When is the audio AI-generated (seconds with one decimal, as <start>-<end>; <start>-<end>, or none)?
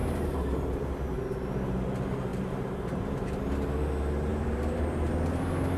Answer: 0.0-0.8; 2.3-3.3; 4.3-5.1